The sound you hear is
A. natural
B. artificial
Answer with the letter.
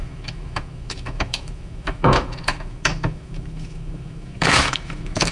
B